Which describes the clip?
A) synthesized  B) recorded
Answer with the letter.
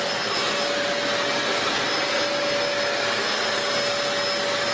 B